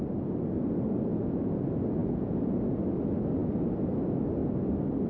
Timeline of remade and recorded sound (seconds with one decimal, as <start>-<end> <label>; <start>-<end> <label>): 0.0-1.1 recorded; 1.1-1.6 remade; 1.6-2.0 recorded; 2.0-2.6 remade; 2.6-5.1 recorded